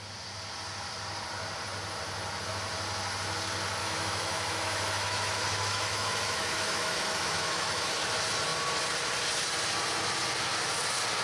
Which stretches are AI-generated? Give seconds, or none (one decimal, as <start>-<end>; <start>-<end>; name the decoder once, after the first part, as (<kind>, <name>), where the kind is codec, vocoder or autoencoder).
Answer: 3.8-8.0 (autoencoder, DAC-VAE)